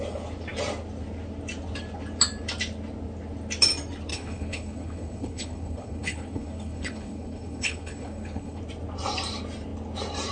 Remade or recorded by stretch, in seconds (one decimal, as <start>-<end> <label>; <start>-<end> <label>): 0.0-4.1 recorded; 4.1-8.6 remade; 8.6-10.3 recorded

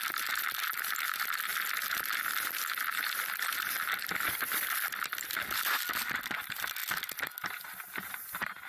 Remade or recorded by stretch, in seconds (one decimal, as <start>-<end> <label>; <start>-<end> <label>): 0.0-8.7 recorded

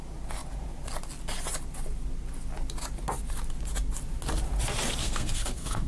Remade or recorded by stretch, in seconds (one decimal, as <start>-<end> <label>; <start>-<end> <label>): 0.0-5.0 recorded; 5.0-5.9 remade

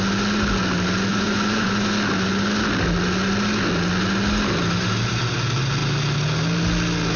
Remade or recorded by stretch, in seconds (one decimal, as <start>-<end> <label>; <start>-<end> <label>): 0.0-1.1 recorded; 1.1-1.7 remade; 1.7-7.2 recorded